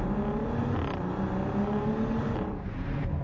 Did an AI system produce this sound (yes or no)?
yes